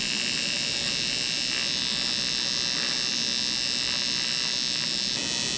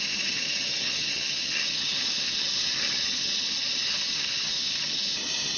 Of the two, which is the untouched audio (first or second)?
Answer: first